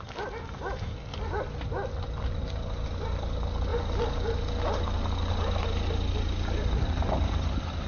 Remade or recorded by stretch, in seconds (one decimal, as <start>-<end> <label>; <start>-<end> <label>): 0.0-7.9 recorded